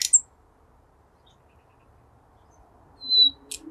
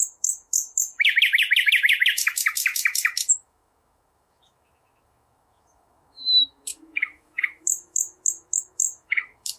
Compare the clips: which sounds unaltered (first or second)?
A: first